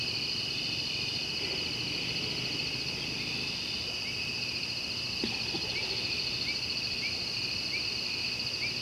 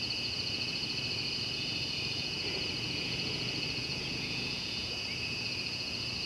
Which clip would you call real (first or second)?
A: first